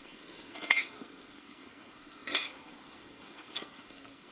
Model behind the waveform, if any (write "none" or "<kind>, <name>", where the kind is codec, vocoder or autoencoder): codec, SNAC